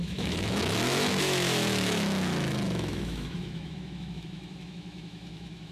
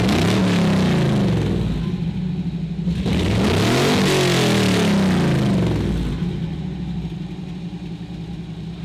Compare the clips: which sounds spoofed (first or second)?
first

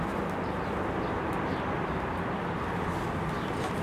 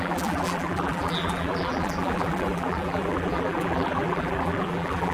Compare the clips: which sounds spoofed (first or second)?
second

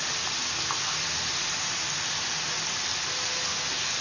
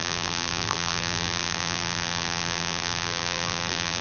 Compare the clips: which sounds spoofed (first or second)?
second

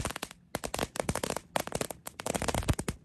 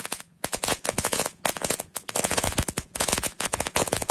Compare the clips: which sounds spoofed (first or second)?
second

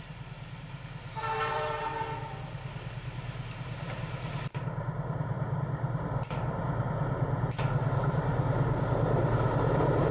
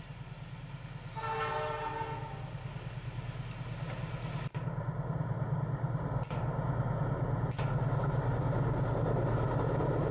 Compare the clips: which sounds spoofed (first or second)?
first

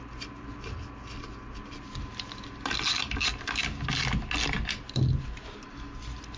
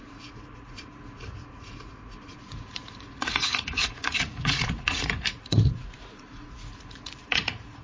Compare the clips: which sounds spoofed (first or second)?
second